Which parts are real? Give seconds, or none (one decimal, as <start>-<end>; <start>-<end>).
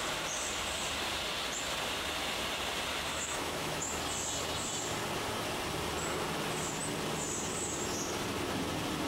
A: 0.0-3.1; 4.0-9.1